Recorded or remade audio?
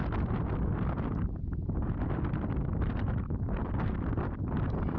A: recorded